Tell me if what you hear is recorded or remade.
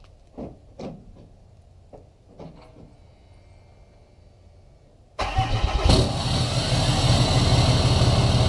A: recorded